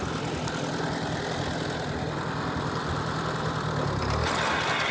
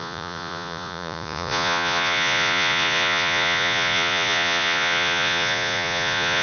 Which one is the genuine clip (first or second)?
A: first